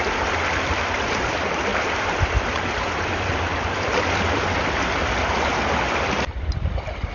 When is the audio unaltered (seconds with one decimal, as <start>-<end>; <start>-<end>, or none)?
none